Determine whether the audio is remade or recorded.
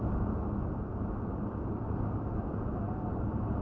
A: recorded